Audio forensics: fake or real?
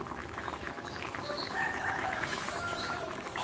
fake